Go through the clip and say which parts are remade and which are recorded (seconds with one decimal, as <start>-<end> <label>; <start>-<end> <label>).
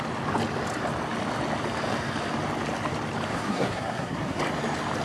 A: 0.0-3.3 recorded; 3.3-4.4 remade; 4.4-5.0 recorded